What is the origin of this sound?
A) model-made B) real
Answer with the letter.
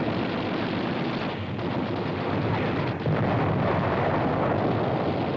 B